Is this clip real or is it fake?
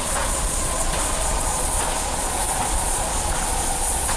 fake